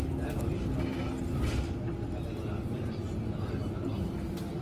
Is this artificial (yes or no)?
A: no